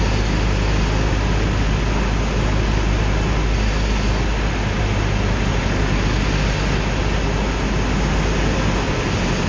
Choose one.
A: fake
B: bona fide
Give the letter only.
B